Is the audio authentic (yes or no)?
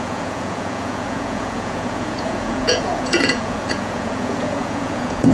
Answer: no